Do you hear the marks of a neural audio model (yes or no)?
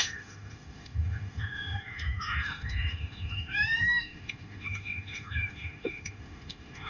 yes